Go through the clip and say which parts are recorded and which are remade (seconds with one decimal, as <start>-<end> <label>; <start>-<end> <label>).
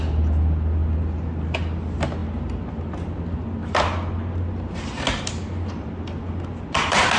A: 0.0-7.2 recorded